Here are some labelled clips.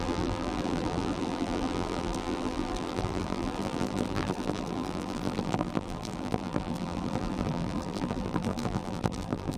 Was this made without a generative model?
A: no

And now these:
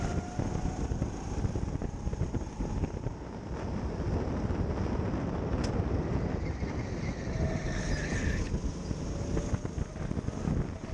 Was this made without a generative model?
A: yes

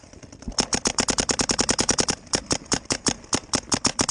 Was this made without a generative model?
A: no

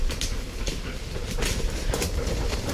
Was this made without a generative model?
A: yes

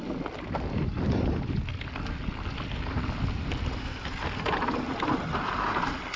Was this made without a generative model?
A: yes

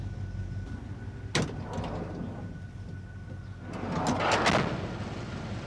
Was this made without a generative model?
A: yes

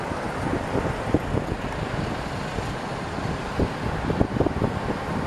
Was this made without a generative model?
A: yes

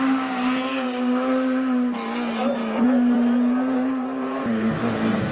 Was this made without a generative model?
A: no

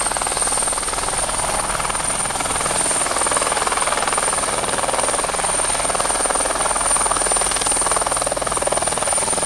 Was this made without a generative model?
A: yes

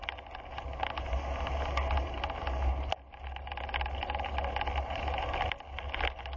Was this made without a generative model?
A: yes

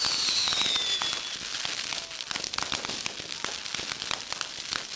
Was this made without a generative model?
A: yes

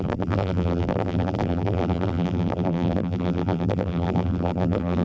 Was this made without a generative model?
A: no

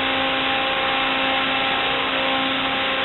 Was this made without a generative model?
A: yes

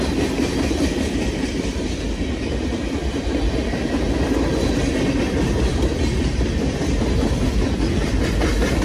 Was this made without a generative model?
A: yes